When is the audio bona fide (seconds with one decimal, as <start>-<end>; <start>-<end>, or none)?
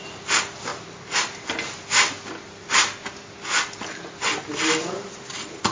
0.0-5.7